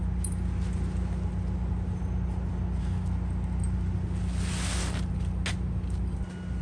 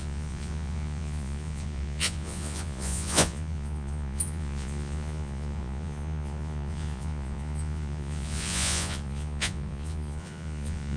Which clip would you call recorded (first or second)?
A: first